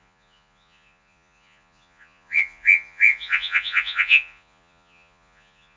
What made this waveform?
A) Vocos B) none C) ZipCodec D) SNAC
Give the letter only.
A